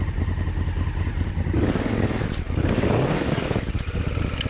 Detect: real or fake real